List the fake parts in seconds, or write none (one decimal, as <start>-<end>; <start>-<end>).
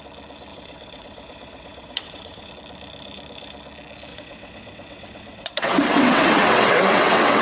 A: 0.5-2.5; 4.1-7.4